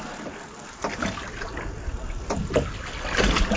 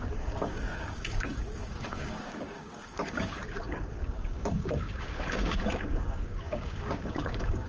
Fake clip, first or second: second